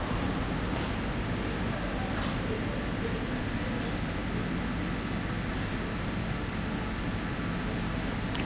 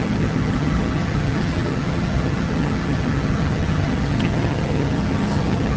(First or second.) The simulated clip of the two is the second